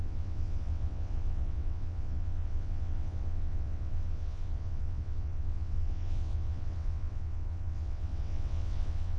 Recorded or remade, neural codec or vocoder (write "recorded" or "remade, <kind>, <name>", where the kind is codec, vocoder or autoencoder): remade, vocoder, WaveNeXt